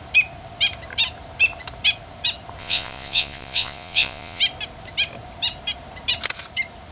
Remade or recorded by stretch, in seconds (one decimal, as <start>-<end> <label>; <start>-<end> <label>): 0.0-2.6 recorded; 2.6-4.4 remade; 4.4-6.9 recorded